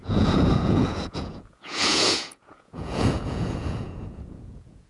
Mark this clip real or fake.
fake